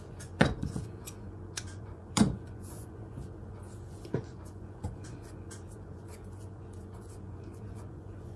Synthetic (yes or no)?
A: yes